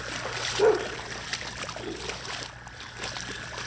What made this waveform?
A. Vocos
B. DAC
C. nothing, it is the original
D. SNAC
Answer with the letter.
C